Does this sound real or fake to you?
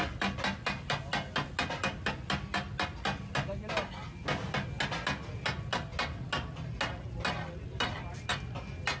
real